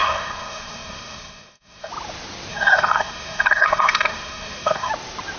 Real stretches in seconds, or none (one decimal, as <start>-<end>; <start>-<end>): 1.9-2.5; 4.9-5.4